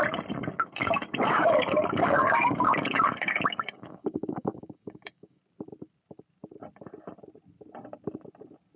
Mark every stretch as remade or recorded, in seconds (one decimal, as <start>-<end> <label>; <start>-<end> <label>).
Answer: 0.0-0.4 recorded; 0.4-5.4 remade; 5.4-8.8 recorded